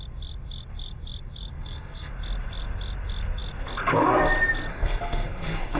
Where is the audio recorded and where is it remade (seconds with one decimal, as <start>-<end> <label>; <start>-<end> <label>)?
0.0-1.5 recorded; 1.5-2.1 remade; 2.1-4.7 recorded; 4.7-5.8 remade